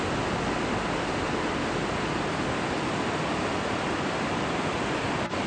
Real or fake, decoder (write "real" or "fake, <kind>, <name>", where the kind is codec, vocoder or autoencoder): real